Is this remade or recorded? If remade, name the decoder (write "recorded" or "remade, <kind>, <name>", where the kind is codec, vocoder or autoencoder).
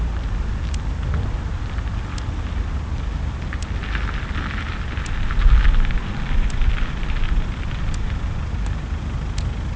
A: recorded